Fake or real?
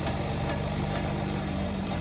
fake